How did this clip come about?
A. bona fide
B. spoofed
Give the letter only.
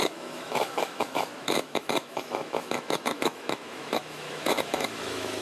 B